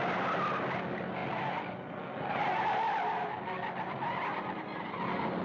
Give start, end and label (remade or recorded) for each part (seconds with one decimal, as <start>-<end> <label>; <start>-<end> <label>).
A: 0.0-4.3 recorded; 4.3-5.0 remade; 5.0-5.4 recorded